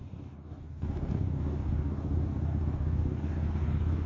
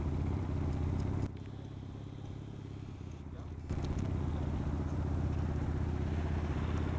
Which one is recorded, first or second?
second